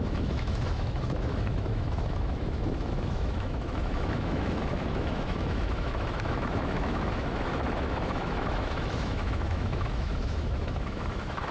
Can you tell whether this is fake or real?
fake